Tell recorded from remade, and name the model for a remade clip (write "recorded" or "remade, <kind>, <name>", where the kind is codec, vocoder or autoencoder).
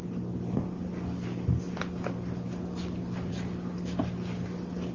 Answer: recorded